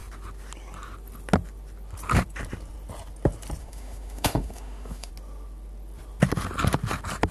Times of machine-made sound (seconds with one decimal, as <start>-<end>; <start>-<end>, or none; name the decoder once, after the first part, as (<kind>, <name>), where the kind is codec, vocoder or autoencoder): 3.6-5.1 (autoencoder, DAC-VAE)